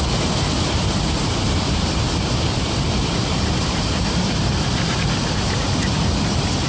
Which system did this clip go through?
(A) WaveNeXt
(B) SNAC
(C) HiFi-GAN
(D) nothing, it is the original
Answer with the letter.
D